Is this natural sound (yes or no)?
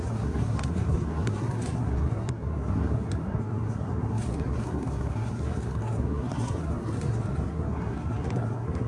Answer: no